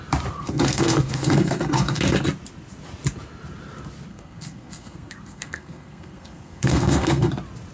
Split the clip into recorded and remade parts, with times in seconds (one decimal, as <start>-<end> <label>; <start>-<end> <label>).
0.0-0.4 recorded; 0.4-2.0 remade; 2.0-4.1 recorded; 4.1-7.3 remade; 7.3-7.7 recorded